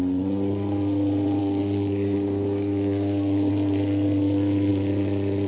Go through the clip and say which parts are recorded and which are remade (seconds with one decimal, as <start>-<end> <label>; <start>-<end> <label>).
0.0-1.4 recorded; 1.4-3.5 remade; 3.5-5.5 recorded